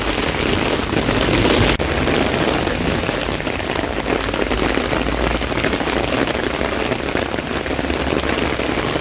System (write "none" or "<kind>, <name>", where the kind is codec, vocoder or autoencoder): none